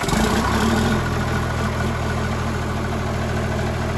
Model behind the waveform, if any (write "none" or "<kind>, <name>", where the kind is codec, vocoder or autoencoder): none